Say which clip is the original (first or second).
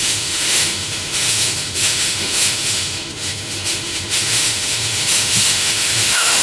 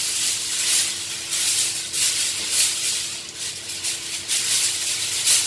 second